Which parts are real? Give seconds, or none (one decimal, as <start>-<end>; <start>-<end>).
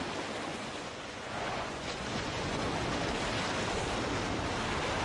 0.0-0.5; 2.7-5.0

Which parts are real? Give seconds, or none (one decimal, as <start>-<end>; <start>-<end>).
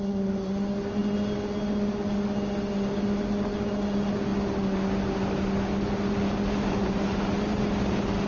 0.0-8.3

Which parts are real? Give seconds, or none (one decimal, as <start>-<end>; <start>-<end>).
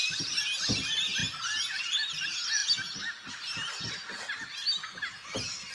0.0-5.7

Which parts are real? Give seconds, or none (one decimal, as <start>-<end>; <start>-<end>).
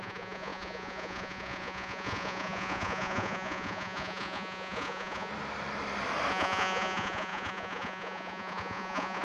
5.3-6.3